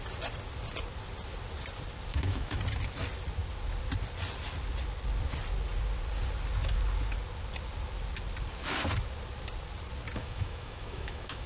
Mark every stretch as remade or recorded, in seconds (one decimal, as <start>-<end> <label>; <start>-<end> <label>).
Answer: 0.0-2.1 recorded; 2.1-2.6 remade; 2.6-10.2 recorded; 10.2-11.5 remade